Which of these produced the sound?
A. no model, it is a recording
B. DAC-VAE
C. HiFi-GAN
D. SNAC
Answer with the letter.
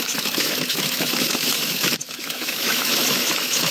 B